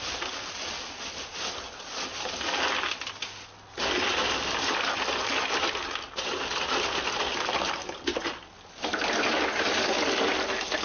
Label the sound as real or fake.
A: real